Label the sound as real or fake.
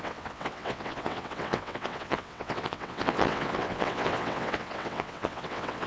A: fake